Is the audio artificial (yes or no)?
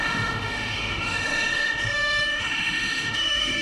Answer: yes